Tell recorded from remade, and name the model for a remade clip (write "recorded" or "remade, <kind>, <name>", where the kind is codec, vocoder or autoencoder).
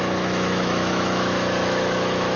remade, autoencoder, DAC-VAE